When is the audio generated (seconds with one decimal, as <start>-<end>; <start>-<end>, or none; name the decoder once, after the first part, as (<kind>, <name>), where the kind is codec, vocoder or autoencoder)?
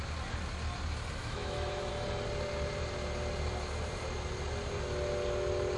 1.2-1.9 (autoencoder, DAC-VAE)